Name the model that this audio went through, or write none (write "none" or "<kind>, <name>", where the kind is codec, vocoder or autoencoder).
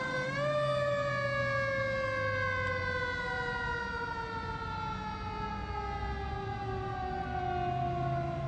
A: none